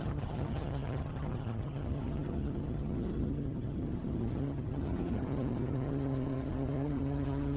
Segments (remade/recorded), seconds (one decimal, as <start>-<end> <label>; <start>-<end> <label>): 0.0-7.6 remade